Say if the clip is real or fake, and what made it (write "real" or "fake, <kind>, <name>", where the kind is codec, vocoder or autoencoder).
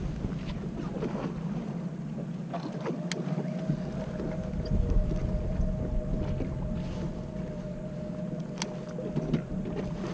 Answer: real